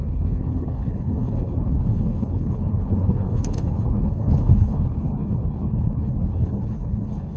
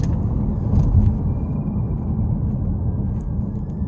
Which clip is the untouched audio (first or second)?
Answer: second